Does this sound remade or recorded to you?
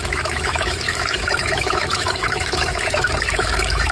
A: remade